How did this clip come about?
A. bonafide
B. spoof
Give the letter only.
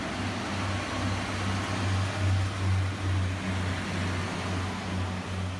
A